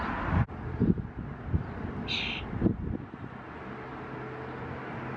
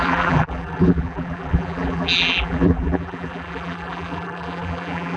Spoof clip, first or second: second